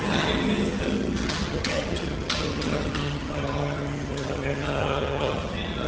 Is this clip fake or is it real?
fake